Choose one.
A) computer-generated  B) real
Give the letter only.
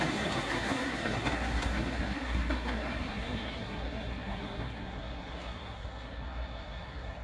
A